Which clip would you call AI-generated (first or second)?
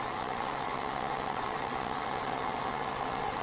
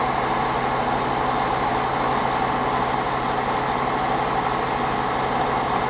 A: first